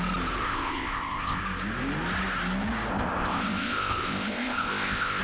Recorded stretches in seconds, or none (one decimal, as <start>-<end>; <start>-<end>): 0.0-0.4; 1.4-2.9